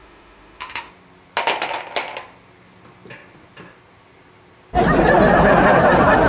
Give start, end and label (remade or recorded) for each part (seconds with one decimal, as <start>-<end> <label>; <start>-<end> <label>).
0.0-0.9 remade; 0.9-6.3 recorded